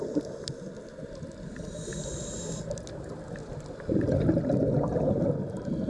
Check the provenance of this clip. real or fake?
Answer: real